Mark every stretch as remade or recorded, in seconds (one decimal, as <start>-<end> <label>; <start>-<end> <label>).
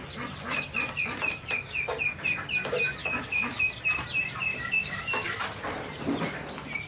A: 0.0-3.0 recorded; 3.0-3.7 remade; 3.7-4.5 recorded; 4.5-5.4 remade; 5.4-6.9 recorded